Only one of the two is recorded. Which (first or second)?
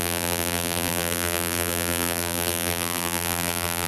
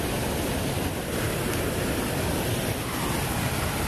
second